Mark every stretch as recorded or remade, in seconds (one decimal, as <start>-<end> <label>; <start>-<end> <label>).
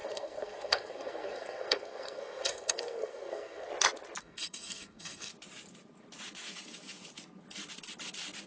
0.0-3.7 remade; 3.7-4.2 recorded; 4.2-5.3 remade; 5.3-8.5 recorded